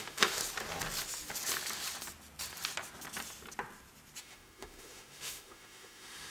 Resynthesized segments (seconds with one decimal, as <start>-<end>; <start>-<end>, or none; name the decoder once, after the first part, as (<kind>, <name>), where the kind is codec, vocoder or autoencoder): 0.0-0.4 (autoencoder, DAC-VAE); 4.2-6.3